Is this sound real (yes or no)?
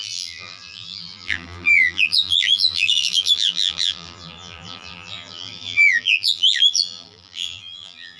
no